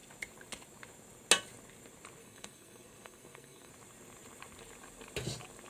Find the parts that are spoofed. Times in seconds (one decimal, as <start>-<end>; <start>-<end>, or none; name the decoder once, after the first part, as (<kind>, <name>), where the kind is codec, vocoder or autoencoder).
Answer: 2.2-3.7 (codec, SNAC)